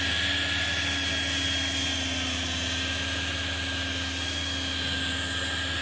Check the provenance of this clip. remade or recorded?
recorded